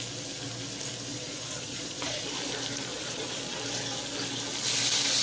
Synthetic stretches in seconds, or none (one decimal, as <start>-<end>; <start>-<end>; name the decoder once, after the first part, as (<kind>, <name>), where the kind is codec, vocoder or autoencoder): 1.1-2.2 (vocoder, Vocos); 2.9-3.4